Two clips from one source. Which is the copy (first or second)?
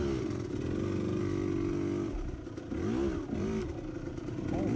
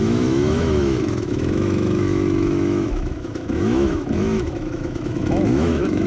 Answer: second